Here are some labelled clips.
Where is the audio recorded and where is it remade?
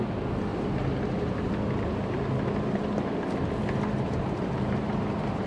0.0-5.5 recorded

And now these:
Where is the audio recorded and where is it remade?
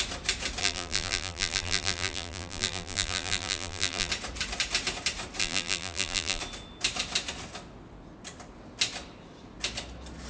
0.0-0.6 recorded; 0.6-4.1 remade; 4.1-5.4 recorded; 5.4-6.4 remade; 6.4-10.3 recorded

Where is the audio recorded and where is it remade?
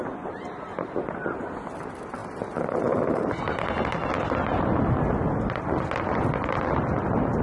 0.0-7.4 recorded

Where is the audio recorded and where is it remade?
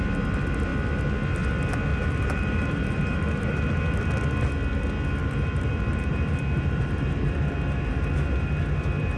0.0-1.9 recorded; 1.9-4.1 remade; 4.1-5.2 recorded; 5.2-8.6 remade; 8.6-9.2 recorded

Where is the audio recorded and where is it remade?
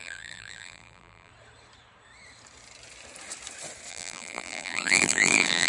0.0-1.3 remade; 1.3-3.9 recorded; 3.9-5.7 remade